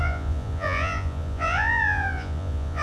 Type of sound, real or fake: fake